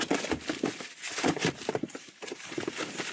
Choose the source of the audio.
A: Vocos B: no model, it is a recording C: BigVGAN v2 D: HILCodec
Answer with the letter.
B